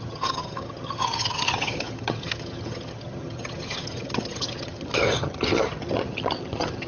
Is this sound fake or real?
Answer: fake